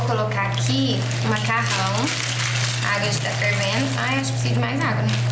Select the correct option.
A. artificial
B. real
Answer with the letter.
B